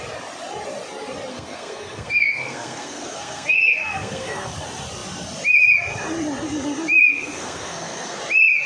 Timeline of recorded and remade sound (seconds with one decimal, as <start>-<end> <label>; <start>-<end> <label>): 0.0-1.3 recorded; 1.3-4.5 remade; 4.5-7.1 recorded; 7.1-8.2 remade; 8.2-8.7 recorded